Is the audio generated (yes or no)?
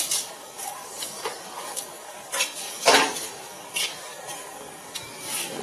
yes